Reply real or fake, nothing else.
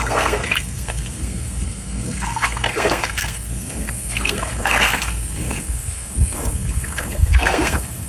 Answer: fake